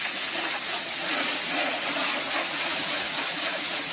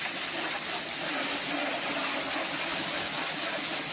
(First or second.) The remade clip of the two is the first